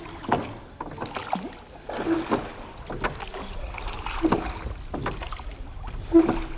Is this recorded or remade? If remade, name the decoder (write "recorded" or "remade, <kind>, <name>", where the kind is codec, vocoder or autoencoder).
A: recorded